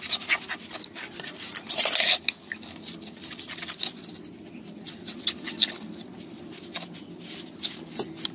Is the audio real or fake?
real